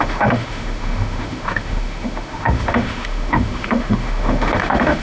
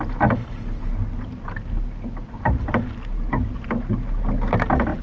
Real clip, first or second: second